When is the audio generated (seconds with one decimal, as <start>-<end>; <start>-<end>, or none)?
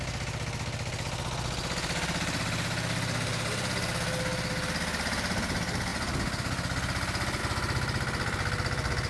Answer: none